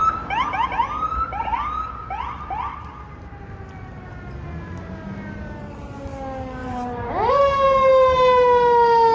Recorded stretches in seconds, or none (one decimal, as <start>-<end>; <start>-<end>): 0.0-2.7; 3.4-6.6; 7.3-9.1